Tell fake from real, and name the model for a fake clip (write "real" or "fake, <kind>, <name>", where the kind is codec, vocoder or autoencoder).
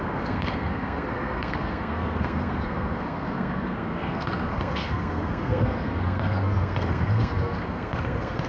fake, codec, SNAC